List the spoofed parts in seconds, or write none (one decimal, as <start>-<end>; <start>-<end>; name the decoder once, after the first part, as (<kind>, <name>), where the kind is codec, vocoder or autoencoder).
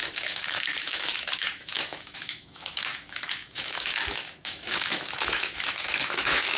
0.0-6.6 (autoencoder, DAC-VAE)